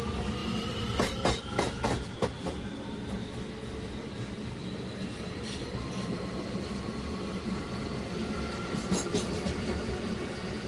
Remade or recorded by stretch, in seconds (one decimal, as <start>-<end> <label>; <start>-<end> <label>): 0.0-3.2 recorded; 3.2-3.9 remade; 3.9-10.7 recorded